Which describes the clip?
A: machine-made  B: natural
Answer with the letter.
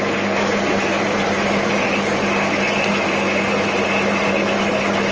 B